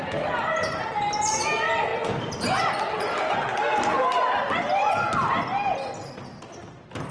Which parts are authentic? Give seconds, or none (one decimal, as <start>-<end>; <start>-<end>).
0.0-7.1